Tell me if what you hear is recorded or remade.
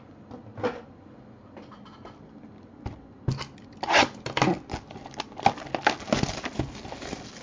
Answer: recorded